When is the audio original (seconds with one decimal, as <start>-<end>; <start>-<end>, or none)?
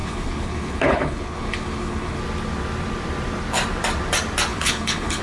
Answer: 2.2-4.5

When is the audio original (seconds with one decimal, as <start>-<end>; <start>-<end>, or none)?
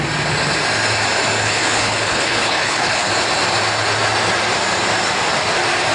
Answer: 0.0-1.4; 3.1-5.9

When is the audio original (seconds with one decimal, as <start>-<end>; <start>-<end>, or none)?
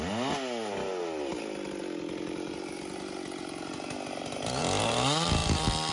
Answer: 0.0-5.9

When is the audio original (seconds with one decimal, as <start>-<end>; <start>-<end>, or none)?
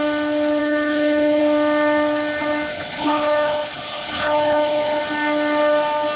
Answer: 0.0-0.6; 1.4-2.7; 5.0-6.2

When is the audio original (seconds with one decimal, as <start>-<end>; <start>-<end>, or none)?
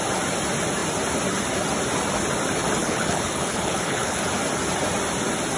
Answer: 0.0-2.8; 4.2-5.6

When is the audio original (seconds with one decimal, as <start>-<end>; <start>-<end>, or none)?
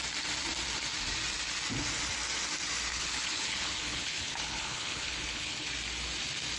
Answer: 0.0-2.9; 5.7-6.6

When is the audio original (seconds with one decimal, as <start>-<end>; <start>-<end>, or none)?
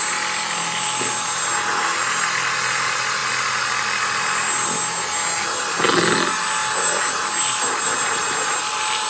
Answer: 0.0-9.1